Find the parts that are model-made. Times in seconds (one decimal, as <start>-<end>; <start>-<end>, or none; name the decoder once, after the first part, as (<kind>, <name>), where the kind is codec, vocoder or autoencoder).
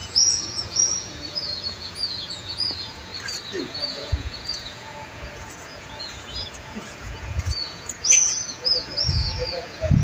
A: 0.0-3.1 (vocoder, Vocos); 3.6-10.0